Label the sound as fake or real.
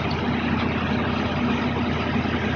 real